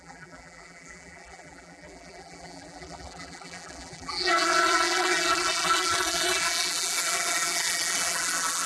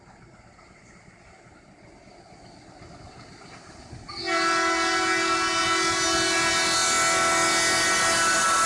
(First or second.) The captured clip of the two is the second